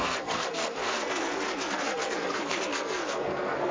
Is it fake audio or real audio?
fake